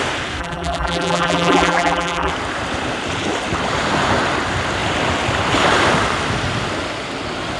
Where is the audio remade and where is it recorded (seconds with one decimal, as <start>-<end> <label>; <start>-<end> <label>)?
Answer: 0.0-0.4 recorded; 0.4-2.3 remade; 2.3-7.6 recorded